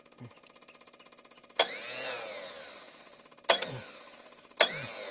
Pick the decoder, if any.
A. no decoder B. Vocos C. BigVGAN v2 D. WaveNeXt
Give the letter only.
A